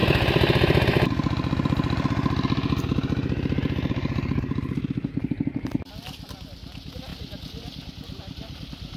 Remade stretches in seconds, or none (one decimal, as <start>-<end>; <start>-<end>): none